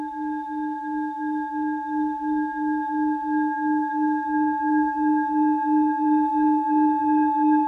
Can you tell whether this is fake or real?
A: fake